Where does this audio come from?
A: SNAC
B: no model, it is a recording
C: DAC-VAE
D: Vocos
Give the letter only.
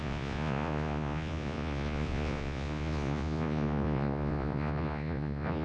D